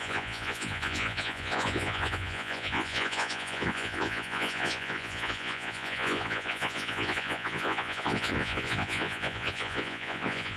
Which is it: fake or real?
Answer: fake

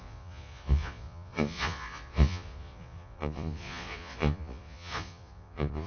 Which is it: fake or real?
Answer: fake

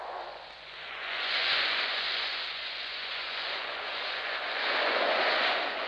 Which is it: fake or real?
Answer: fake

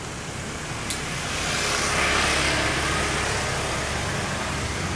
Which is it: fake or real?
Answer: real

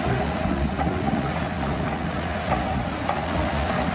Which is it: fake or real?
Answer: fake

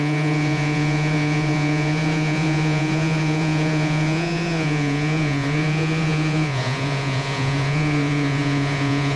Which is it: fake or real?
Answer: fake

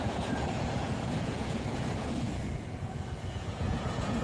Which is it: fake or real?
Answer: fake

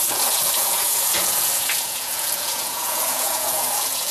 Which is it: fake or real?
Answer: fake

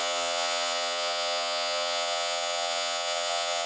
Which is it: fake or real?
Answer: fake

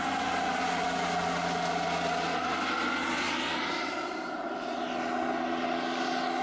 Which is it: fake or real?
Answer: real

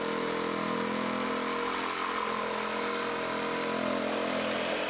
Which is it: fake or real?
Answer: real